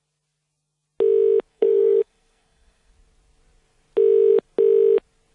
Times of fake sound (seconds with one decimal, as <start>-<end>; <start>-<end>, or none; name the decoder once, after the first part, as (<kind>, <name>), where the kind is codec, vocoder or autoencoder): 1.5-2.9 (codec, SNAC)